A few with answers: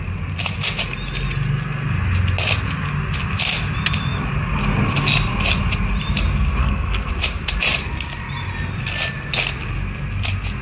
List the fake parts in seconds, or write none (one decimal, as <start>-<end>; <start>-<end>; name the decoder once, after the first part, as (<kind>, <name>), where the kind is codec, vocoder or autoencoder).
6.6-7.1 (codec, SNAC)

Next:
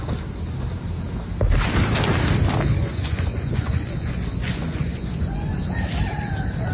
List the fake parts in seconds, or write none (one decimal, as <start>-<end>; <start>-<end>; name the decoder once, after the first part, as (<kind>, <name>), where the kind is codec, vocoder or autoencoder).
2.8-5.5 (vocoder, Vocos)

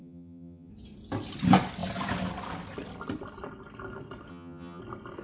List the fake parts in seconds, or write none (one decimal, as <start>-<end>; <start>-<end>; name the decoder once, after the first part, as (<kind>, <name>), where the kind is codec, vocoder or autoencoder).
0.0-0.7 (vocoder, HiFi-GAN); 4.3-4.8

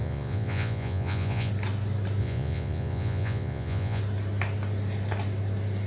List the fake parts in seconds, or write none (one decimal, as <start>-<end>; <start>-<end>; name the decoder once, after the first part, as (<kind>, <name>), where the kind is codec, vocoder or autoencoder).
0.0-1.5 (vocoder, Vocos); 2.2-4.0

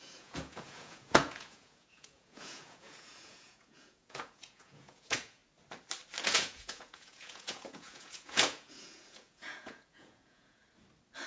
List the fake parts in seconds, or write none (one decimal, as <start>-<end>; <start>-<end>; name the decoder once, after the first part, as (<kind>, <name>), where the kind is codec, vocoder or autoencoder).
0.0-5.4 (vocoder, Vocos); 6.2-10.6

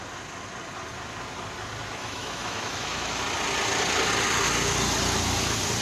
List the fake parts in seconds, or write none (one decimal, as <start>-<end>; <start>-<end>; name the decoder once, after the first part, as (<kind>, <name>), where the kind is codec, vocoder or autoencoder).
2.0-3.2 (autoencoder, DAC-VAE)

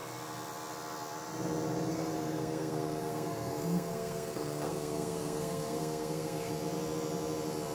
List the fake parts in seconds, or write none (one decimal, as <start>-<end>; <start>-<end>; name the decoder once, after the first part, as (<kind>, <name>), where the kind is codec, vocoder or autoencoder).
1.9-6.5 (codec, SNAC)

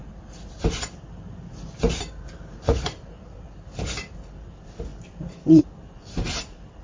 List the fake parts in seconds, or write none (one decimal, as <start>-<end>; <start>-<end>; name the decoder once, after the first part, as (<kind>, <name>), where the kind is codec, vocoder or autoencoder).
none